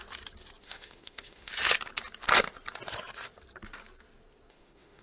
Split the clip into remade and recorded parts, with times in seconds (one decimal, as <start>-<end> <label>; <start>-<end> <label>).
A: 0.0-0.6 recorded; 0.6-1.5 remade; 1.5-4.5 recorded; 4.5-5.0 remade